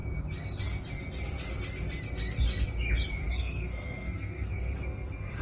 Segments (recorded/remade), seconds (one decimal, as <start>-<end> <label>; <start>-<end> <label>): 0.0-3.2 recorded; 3.2-5.4 remade